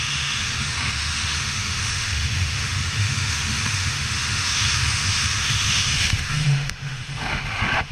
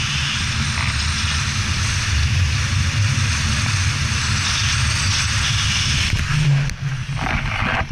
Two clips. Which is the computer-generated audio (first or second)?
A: first